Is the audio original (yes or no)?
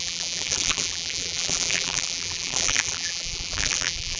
no